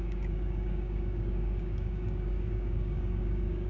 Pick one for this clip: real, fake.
fake